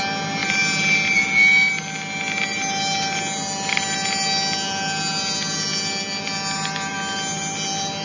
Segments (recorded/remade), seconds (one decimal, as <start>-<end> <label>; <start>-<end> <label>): 0.0-8.0 recorded